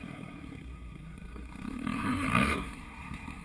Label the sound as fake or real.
fake